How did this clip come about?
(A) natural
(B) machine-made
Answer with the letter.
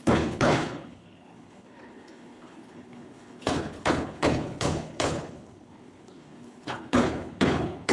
B